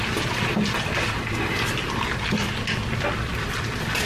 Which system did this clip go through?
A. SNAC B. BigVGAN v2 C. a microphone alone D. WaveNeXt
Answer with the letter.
C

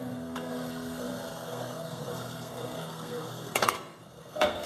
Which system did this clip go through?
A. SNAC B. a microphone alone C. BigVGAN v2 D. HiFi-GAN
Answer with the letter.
A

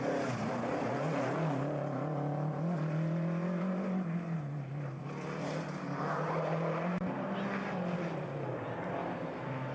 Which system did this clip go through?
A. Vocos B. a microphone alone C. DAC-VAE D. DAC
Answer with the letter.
B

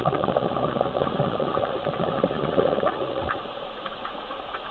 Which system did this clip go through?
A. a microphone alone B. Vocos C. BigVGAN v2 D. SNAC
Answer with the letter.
B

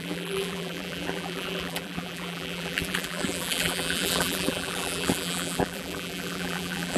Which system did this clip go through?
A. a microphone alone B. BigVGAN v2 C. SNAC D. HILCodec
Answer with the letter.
B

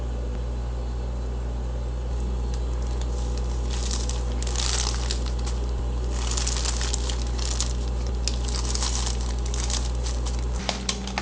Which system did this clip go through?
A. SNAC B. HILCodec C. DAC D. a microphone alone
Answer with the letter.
D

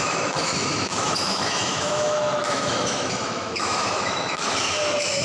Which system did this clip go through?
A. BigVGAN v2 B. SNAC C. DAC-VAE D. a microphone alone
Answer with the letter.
C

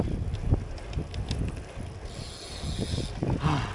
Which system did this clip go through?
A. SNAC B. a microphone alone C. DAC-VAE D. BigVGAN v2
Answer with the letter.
B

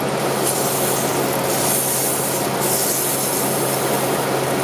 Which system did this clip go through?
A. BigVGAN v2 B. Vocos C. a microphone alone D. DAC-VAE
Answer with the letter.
C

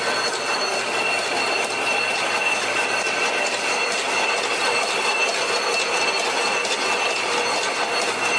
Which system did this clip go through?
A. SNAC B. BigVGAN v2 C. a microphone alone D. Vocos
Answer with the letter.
C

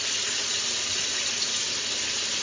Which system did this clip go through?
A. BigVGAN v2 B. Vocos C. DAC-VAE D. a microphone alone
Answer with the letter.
D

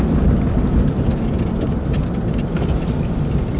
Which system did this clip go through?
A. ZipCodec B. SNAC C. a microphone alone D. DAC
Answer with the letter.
C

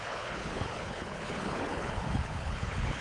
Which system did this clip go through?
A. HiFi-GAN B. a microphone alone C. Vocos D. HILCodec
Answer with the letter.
D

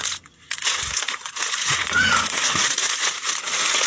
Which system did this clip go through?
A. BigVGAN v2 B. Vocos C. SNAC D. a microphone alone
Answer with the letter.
B